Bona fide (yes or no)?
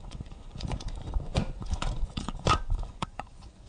no